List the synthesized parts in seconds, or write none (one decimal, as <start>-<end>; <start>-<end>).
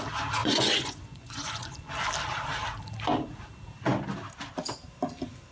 0.4-1.9